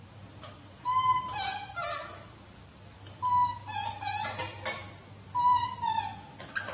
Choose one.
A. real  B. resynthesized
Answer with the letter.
A